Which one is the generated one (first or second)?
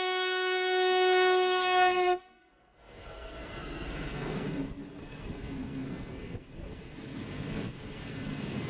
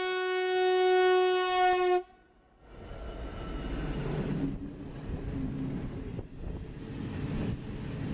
first